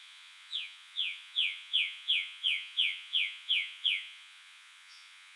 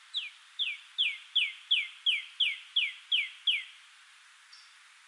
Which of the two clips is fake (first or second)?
first